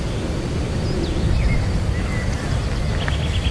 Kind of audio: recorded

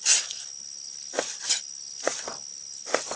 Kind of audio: recorded